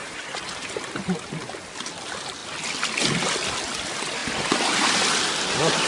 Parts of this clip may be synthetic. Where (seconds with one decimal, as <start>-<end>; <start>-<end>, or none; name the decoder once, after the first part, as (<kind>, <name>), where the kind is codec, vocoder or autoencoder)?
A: 0.0-0.7 (vocoder, BigVGAN v2)